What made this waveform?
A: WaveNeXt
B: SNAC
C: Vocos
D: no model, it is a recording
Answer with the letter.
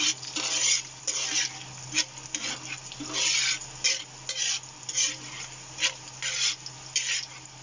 D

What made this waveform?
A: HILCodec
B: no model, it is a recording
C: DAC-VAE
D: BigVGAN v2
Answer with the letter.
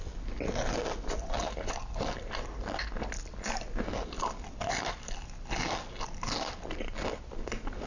B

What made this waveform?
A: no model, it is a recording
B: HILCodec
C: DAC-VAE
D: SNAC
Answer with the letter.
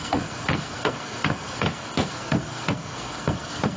D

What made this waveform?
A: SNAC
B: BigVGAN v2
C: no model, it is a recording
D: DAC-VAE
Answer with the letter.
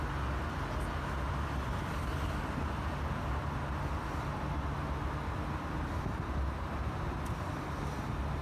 C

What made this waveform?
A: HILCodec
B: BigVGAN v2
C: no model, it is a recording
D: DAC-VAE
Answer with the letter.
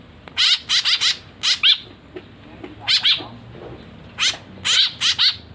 C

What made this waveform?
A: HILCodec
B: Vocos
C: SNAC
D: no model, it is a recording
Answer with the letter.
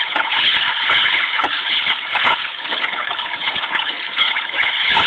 A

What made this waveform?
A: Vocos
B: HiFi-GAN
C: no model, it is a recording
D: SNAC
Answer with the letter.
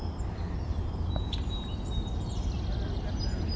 C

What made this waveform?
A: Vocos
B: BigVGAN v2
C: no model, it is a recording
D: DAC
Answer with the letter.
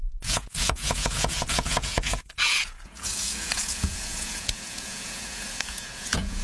A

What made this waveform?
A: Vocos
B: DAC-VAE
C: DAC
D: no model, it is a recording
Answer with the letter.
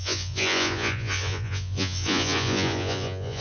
A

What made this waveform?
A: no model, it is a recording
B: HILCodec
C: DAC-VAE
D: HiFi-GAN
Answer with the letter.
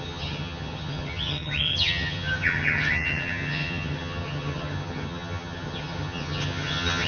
D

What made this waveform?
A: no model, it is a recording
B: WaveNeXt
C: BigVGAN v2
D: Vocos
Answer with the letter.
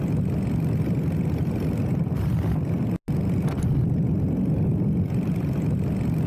A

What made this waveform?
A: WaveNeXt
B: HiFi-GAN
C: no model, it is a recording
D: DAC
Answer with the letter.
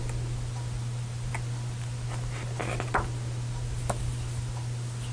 C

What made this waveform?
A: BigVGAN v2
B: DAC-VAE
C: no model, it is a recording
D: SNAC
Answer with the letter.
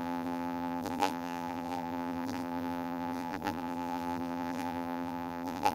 A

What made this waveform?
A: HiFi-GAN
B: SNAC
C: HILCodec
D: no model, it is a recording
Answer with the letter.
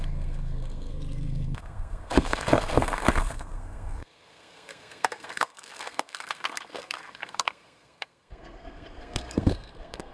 B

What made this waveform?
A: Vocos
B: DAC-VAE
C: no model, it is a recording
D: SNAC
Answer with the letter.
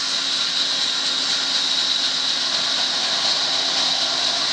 C